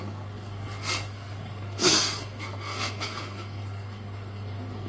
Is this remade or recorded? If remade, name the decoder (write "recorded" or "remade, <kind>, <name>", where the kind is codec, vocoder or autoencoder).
remade, codec, SNAC